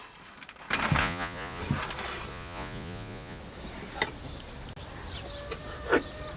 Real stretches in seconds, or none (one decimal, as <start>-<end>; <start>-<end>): 0.0-1.0; 1.6-2.3; 3.4-6.4